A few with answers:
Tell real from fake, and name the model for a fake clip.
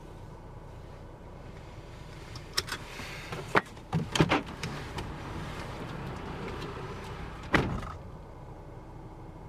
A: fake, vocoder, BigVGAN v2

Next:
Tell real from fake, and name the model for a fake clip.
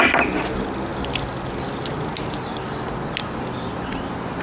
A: real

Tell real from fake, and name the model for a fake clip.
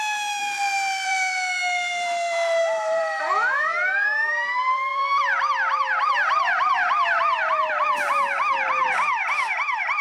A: fake, vocoder, BigVGAN v2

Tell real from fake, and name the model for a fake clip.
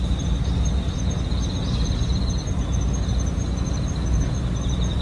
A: real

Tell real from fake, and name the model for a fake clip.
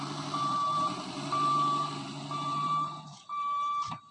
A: fake, vocoder, BigVGAN v2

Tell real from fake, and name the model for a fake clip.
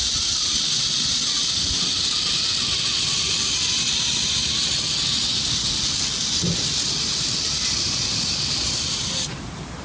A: real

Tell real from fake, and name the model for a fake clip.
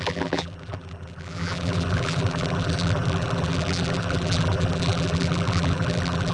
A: fake, vocoder, BigVGAN v2